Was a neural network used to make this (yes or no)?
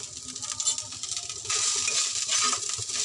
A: no